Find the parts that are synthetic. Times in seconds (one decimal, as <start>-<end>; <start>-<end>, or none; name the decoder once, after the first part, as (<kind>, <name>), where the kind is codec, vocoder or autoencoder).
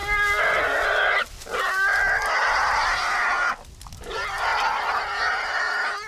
none